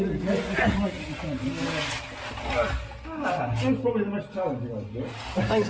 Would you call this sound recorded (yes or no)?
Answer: yes